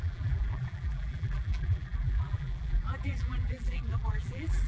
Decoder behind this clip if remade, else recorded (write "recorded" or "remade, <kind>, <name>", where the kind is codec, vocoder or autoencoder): remade, vocoder, BigVGAN v2